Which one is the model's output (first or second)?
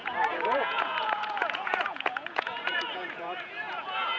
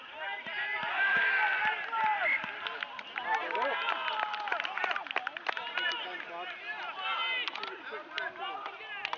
first